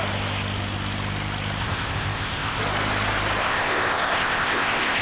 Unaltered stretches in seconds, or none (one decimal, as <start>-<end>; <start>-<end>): 0.0-1.6; 2.6-3.4